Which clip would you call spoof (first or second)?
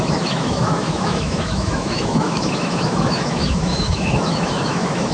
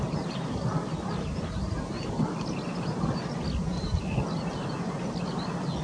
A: first